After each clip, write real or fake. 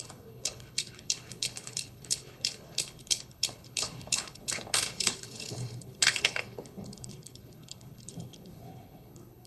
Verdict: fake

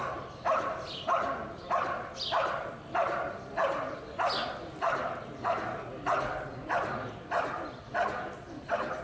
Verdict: real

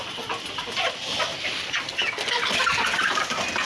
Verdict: real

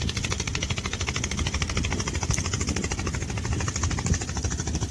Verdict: fake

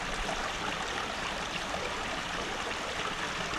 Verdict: real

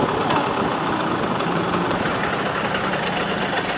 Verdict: real